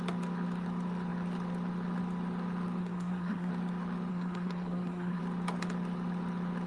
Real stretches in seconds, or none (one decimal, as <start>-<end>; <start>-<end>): 0.0-2.8; 3.5-4.1; 5.2-6.7